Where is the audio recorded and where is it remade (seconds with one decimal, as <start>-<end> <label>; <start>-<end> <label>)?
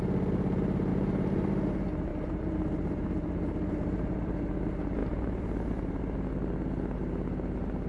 0.0-0.9 recorded; 0.9-1.5 remade; 1.5-2.1 recorded; 2.1-4.4 remade; 4.4-5.0 recorded; 5.0-6.0 remade; 6.0-7.9 recorded